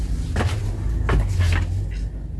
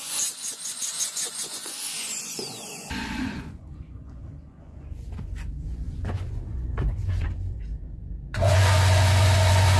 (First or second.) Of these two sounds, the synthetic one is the second